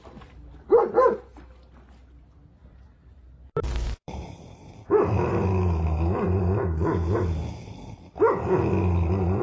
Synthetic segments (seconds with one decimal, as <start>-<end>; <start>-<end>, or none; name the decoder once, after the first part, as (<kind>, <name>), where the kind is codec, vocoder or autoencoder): 2.6-4.7 (vocoder, BigVGAN v2)

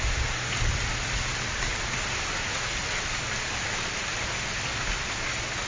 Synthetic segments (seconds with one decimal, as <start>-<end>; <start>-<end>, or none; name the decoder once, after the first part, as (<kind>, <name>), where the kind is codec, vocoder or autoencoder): none

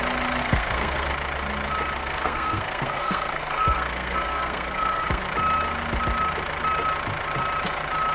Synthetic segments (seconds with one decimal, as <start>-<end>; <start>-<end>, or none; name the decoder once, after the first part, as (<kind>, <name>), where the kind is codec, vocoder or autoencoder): 0.4-1.1 (codec, SNAC); 2.0-5.2

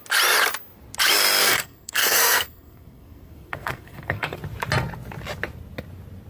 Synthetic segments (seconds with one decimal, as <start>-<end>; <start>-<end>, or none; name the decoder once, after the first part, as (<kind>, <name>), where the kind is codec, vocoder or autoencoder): 1.4-4.4 (codec, SNAC)

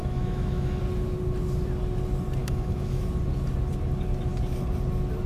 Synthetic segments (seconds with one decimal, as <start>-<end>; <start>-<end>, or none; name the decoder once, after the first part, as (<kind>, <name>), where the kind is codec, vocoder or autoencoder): 0.0-0.8 (autoencoder, DAC-VAE); 2.4-3.0

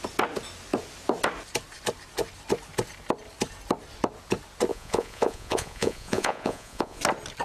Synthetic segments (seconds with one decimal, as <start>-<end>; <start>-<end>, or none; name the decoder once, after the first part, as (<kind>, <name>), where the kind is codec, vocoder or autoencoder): 4.7-7.0 (vocoder, Vocos)

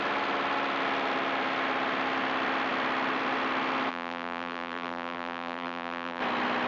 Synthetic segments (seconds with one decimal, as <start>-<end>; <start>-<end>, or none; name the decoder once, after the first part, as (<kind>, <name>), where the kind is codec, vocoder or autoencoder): 3.9-6.2 (vocoder, BigVGAN v2)

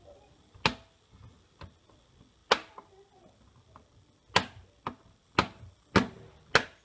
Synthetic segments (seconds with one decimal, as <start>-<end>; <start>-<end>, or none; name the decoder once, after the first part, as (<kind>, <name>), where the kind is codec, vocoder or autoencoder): none